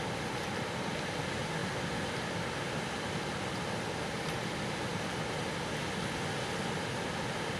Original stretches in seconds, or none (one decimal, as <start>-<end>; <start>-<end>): 0.0-1.6; 4.5-4.9; 5.4-7.6